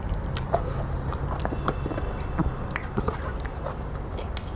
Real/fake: real